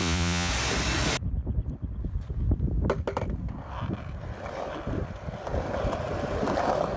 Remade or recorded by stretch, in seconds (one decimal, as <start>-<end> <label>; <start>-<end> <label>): 0.0-0.5 remade; 0.5-7.0 recorded